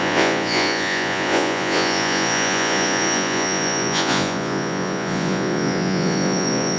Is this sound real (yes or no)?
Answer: no